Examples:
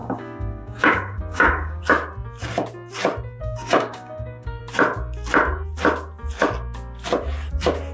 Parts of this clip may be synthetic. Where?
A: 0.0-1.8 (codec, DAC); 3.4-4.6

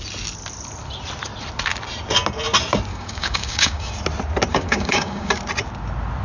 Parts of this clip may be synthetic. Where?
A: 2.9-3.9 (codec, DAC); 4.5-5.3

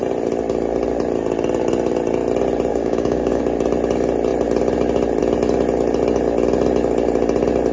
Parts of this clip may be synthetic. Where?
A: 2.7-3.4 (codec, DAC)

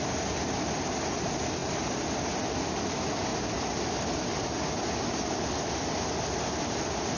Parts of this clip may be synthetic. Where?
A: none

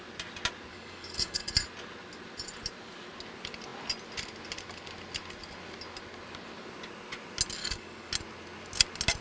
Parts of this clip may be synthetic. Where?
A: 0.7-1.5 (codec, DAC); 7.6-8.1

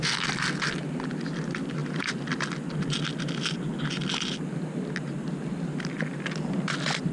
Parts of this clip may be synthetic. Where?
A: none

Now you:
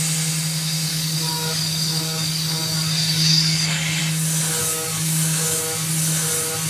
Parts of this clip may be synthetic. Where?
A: 0.9-4.0 (codec, DAC); 4.6-5.6

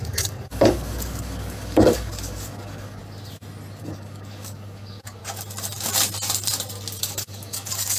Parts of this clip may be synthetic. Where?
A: 0.0-3.0 (codec, DAC); 3.8-5.2; 7.0-8.0